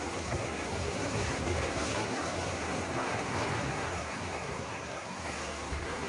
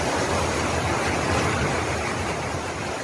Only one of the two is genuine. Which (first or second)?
second